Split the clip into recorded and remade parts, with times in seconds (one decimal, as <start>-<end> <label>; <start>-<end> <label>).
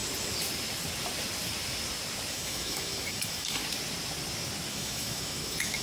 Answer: 0.0-2.3 recorded; 2.3-3.6 remade; 3.6-4.7 recorded; 4.7-5.8 remade